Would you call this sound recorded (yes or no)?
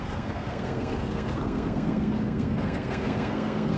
no